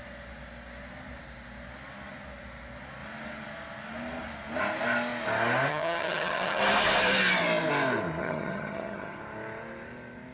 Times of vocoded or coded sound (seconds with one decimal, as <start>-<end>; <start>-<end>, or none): 5.7-6.6; 8.2-9.2